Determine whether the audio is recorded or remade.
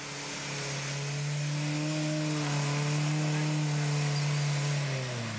recorded